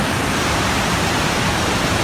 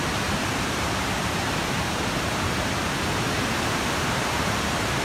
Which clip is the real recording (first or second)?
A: first